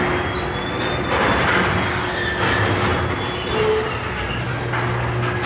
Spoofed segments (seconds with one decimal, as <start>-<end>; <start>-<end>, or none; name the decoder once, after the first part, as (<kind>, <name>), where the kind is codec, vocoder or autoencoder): none